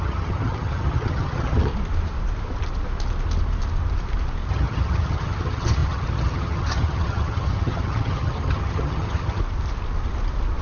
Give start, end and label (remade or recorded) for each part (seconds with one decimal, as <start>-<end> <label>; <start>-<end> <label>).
0.0-1.7 remade; 1.7-4.5 recorded; 4.5-9.4 remade; 9.4-10.6 recorded